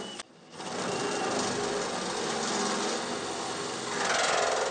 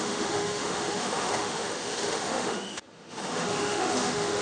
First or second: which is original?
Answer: first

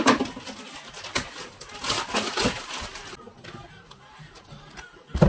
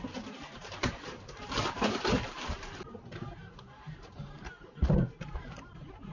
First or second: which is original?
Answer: first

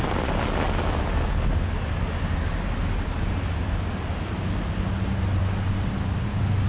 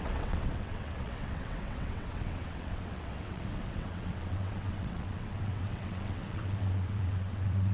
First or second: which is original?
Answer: first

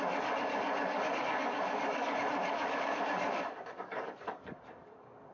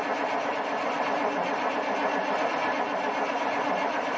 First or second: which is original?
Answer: second